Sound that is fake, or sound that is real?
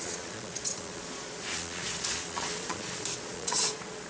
fake